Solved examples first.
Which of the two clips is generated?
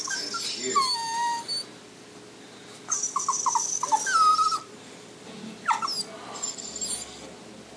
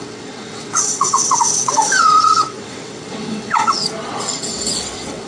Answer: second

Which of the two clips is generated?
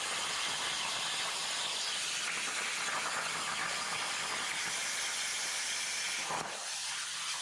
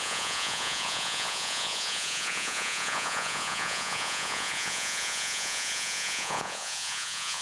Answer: second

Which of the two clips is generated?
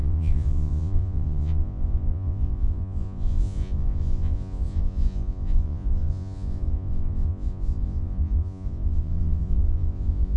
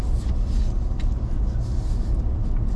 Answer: first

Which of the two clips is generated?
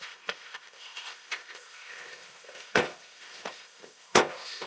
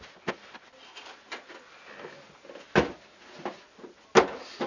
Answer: first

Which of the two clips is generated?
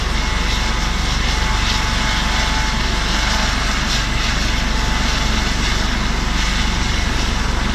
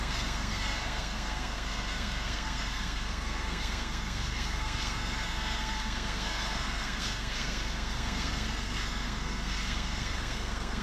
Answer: second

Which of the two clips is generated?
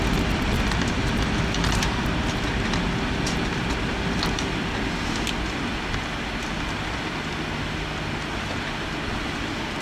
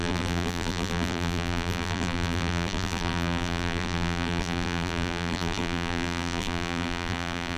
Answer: second